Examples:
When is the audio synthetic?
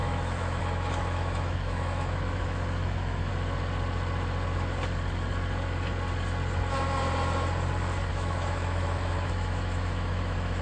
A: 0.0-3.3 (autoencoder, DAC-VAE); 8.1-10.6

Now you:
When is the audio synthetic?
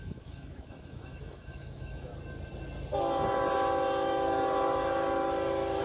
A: 0.0-2.1 (autoencoder, DAC-VAE)